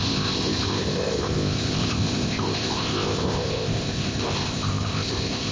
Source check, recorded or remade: remade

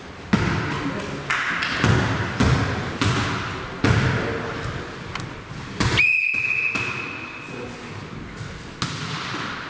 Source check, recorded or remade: recorded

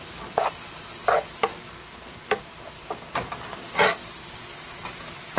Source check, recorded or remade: recorded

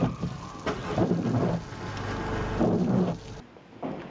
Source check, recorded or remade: recorded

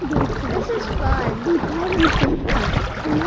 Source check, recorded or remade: recorded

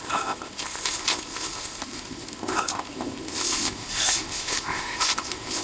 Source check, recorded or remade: remade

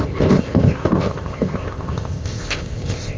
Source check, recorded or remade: remade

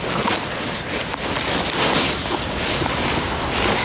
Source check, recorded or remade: recorded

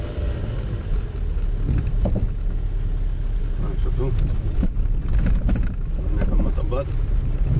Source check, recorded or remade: recorded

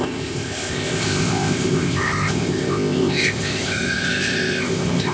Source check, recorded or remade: remade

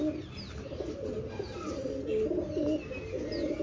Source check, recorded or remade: recorded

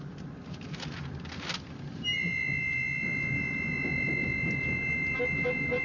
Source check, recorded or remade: recorded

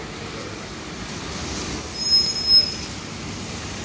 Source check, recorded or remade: recorded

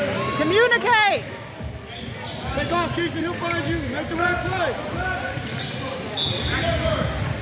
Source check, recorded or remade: recorded